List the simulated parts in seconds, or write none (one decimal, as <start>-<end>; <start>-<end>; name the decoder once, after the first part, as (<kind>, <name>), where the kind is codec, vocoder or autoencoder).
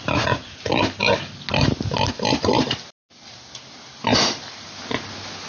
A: 0.0-0.8 (vocoder, Vocos)